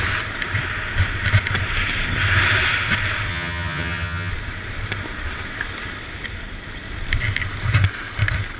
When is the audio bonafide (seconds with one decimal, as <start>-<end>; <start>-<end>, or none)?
0.0-3.3; 4.3-8.6